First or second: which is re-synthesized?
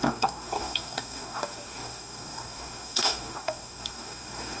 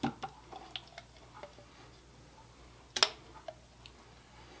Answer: first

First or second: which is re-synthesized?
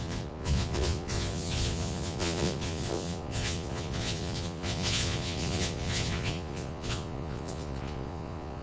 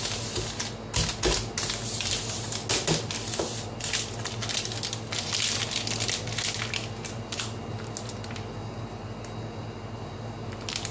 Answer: first